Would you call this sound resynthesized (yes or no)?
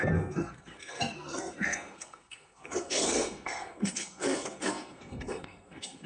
yes